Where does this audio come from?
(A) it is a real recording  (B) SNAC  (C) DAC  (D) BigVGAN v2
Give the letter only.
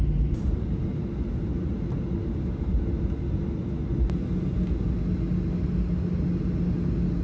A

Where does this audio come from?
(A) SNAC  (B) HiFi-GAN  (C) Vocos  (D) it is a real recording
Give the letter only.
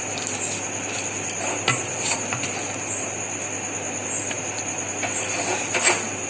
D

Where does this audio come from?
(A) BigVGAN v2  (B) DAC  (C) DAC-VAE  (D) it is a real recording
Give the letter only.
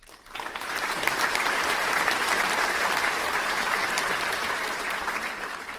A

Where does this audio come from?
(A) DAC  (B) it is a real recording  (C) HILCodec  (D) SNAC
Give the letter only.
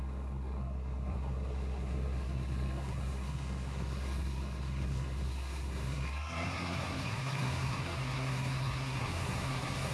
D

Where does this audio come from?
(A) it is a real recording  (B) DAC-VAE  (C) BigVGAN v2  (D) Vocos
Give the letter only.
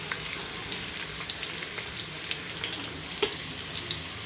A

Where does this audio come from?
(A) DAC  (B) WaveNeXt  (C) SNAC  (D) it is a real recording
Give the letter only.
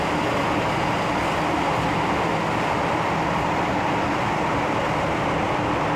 D